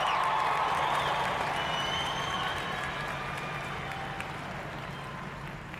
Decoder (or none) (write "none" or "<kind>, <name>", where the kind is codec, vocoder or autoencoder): none